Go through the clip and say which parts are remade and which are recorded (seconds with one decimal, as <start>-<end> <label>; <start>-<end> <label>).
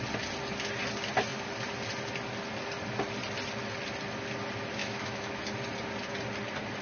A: 0.0-4.8 recorded; 4.8-5.4 remade; 5.4-6.8 recorded